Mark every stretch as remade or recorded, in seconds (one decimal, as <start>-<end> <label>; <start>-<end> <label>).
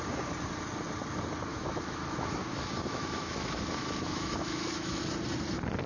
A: 0.0-1.5 recorded; 1.5-5.0 remade; 5.0-5.9 recorded